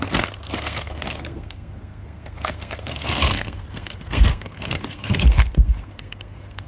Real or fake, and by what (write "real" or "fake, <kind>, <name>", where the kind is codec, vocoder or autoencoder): fake, codec, SNAC